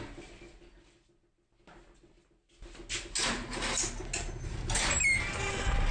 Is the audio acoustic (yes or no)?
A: yes